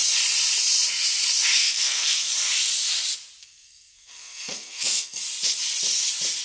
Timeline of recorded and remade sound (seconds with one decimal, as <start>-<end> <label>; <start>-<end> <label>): 0.0-1.6 recorded; 1.6-2.3 remade; 2.3-3.4 recorded; 3.4-5.2 remade; 5.2-6.4 recorded